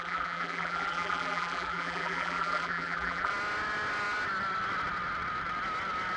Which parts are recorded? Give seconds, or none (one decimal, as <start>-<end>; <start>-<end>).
3.3-6.2